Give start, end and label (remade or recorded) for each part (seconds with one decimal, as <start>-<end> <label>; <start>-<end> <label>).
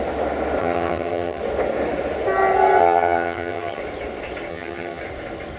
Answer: 0.0-0.6 recorded; 0.6-1.4 remade; 1.4-2.8 recorded; 2.8-3.8 remade; 3.8-4.5 recorded; 4.5-5.0 remade; 5.0-5.6 recorded